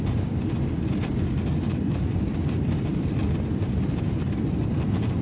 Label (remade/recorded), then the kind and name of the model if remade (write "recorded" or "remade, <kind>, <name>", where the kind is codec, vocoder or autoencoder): recorded